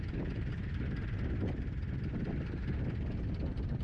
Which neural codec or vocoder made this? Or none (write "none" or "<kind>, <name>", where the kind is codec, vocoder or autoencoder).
none